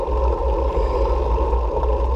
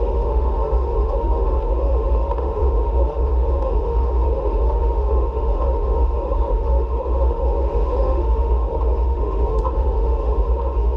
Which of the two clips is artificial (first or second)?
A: second